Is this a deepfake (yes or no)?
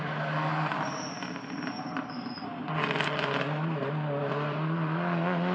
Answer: no